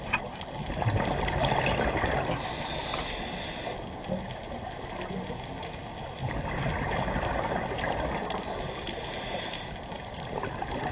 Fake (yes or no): no